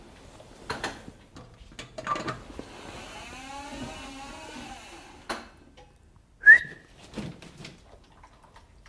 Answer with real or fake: real